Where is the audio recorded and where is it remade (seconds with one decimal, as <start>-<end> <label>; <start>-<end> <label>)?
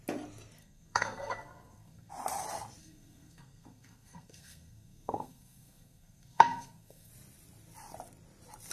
0.0-0.6 recorded; 0.6-2.1 remade; 2.1-2.8 recorded; 2.8-7.1 remade; 7.1-8.7 recorded